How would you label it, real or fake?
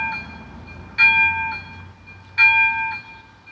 real